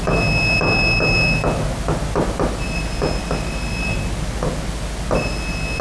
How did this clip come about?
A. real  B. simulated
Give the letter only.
A